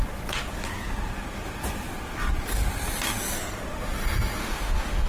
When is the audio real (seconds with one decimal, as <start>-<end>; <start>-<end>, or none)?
0.0-4.4